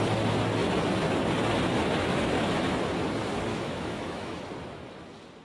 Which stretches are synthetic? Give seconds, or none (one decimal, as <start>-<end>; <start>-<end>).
3.5-4.4